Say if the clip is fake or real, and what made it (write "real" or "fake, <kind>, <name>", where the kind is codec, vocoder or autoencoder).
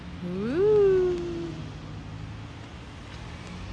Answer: real